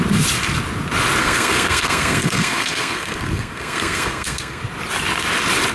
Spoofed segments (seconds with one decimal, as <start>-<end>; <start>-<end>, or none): 1.2-4.6